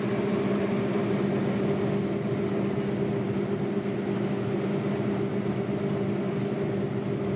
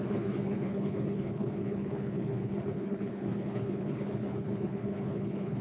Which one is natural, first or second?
first